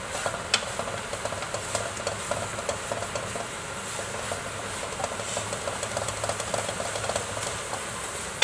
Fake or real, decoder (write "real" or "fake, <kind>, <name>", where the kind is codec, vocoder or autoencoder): real